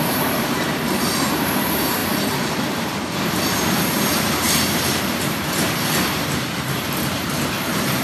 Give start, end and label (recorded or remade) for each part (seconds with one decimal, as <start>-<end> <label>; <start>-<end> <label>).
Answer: 0.0-2.0 remade; 2.0-3.6 recorded; 3.6-8.0 remade